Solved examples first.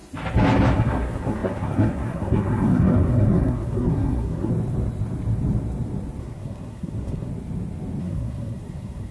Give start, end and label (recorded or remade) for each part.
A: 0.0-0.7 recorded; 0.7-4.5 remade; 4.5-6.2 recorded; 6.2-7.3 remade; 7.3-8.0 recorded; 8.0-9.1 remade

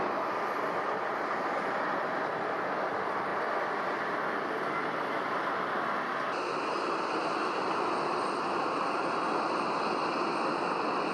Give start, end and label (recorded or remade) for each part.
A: 0.0-11.1 recorded

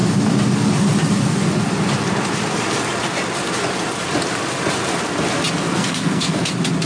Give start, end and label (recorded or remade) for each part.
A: 0.0-5.7 recorded; 5.7-6.5 remade; 6.5-6.9 recorded

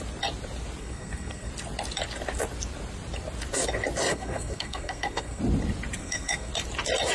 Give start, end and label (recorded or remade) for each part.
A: 0.0-0.8 recorded; 0.8-1.5 remade; 1.5-4.1 recorded; 4.1-5.4 remade; 5.4-6.0 recorded; 6.0-6.5 remade; 6.5-7.1 recorded

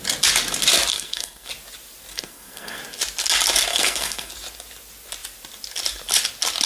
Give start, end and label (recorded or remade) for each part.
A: 0.0-0.9 recorded; 0.9-1.5 remade; 1.5-2.1 recorded; 2.1-2.8 remade; 2.8-3.7 recorded; 3.7-4.3 remade; 4.3-6.7 recorded

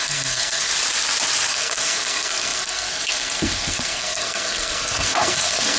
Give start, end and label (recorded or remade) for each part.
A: 0.0-0.7 remade; 0.7-1.5 recorded; 1.5-5.8 remade

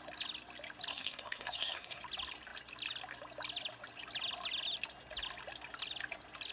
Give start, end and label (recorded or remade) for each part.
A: 0.0-0.9 recorded; 0.9-2.0 remade; 2.0-6.5 recorded